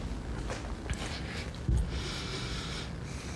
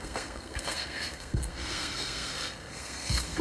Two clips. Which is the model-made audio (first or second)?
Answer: second